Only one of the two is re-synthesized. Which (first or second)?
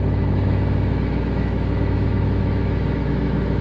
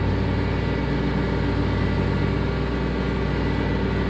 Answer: first